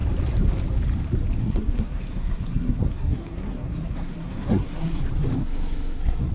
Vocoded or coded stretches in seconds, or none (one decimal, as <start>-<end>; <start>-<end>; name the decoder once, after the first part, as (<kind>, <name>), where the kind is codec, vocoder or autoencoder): 1.4-5.0 (codec, SNAC); 5.4-6.3